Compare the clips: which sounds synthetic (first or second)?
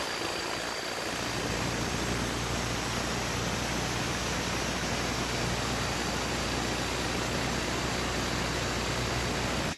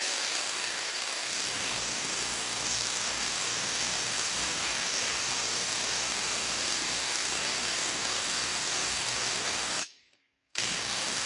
second